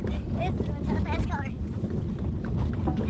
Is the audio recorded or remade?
recorded